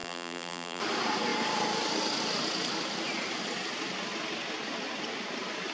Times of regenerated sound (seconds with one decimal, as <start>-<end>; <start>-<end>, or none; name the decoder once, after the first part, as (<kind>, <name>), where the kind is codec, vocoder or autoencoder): 0.0-0.8 (vocoder, BigVGAN v2)